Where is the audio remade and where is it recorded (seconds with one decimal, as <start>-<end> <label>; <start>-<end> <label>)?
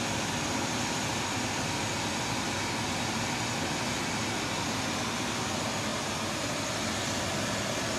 0.0-5.9 recorded; 5.9-6.9 remade; 6.9-8.0 recorded